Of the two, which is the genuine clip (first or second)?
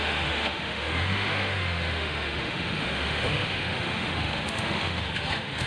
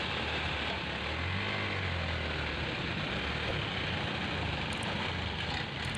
second